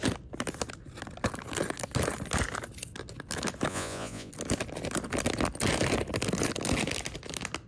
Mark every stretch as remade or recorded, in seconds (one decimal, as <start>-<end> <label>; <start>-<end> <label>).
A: 0.0-3.7 recorded; 3.7-4.3 remade; 4.3-7.7 recorded